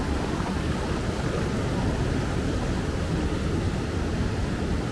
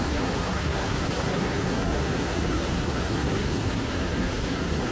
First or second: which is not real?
second